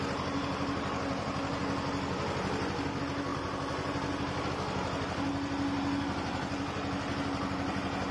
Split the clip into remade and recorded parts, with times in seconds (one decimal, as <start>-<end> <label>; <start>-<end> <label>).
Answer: 0.0-8.1 recorded